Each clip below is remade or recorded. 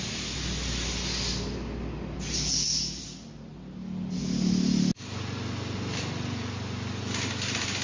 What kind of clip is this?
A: recorded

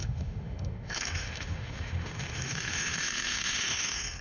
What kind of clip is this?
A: remade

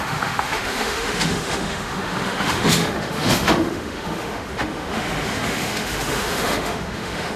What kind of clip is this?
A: remade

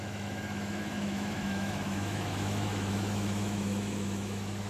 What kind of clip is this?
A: remade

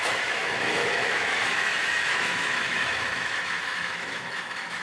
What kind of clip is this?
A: remade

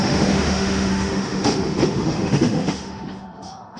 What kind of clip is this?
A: remade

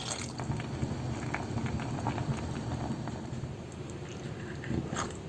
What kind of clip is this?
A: recorded